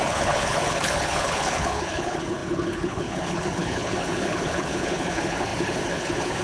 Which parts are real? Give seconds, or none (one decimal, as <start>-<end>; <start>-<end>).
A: none